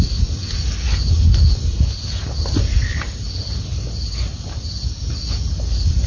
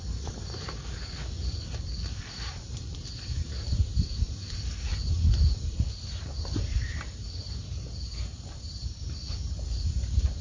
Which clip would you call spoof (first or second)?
second